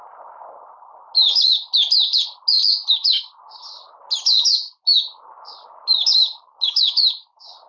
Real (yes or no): yes